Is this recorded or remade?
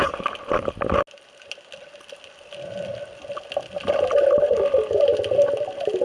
recorded